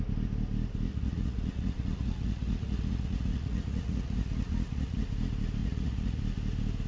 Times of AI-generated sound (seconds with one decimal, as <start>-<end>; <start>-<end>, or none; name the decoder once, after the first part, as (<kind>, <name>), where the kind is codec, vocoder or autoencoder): 0.9-5.0 (vocoder, Vocos); 5.6-6.2